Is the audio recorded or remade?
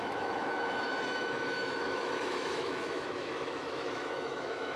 remade